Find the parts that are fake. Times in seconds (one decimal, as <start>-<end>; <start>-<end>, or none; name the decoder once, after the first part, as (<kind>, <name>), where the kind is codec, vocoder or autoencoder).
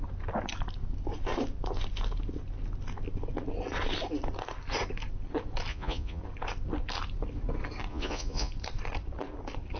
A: 5.7-6.2 (vocoder, Vocos); 7.9-8.5